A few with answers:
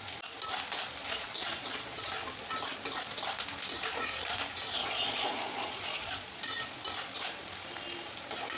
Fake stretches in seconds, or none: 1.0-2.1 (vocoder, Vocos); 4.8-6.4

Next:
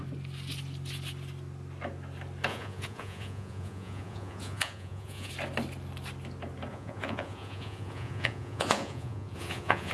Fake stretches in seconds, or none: 2.5-5.3 (vocoder, Vocos); 6.7-9.9

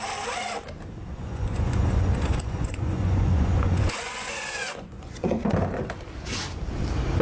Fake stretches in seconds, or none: 1.1-5.4 (vocoder, Vocos)

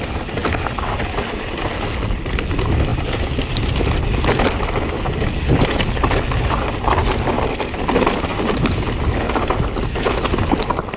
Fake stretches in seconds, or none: none

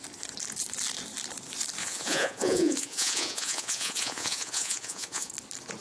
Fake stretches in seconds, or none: 1.8-5.3 (vocoder, Vocos)

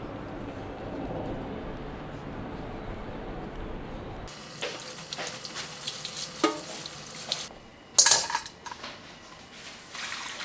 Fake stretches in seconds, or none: none

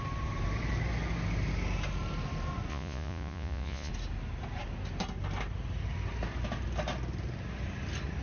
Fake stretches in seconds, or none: 2.7-3.9 (vocoder, Vocos)

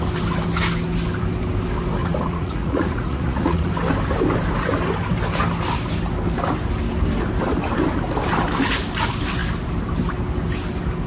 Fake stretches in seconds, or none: 2.0-3.7 (vocoder, Vocos)